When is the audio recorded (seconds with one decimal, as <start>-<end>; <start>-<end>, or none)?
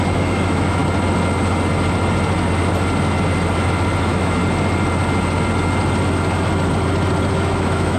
0.8-4.0; 4.4-7.3